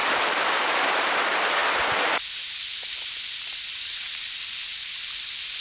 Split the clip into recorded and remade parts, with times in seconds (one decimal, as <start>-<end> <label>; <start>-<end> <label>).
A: 0.0-1.1 remade; 1.1-5.6 recorded